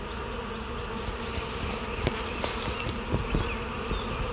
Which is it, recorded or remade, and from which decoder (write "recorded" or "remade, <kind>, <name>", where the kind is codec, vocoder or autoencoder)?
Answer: recorded